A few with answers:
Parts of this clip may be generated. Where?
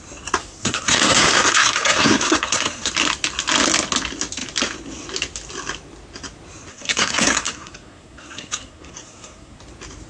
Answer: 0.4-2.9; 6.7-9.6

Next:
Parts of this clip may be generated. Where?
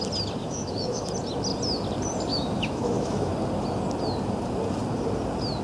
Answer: 0.4-1.1; 2.3-3.3